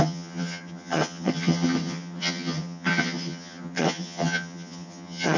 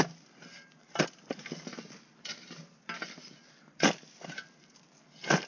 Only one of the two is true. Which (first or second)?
second